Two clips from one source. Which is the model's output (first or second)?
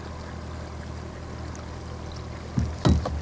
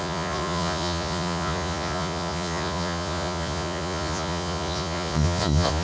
second